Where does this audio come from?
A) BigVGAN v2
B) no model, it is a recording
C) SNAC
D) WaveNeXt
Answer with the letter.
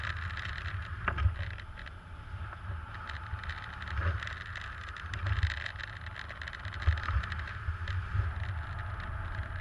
B